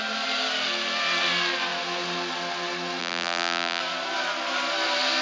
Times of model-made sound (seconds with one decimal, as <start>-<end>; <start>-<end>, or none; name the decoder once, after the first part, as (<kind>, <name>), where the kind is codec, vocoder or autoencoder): 3.0-3.8 (vocoder, BigVGAN v2)